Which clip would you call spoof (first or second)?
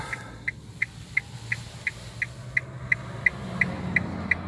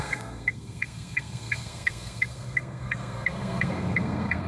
second